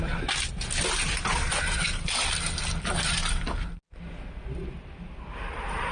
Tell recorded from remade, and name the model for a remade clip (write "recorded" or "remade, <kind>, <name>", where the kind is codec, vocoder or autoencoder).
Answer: recorded